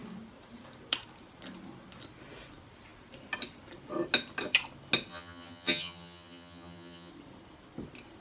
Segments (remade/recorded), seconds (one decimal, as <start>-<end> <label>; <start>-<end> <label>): 0.0-5.1 recorded; 5.1-7.1 remade; 7.1-8.2 recorded